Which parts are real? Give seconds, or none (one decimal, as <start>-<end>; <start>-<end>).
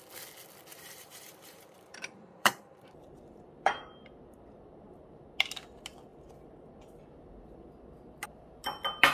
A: 0.0-0.7; 4.6-9.1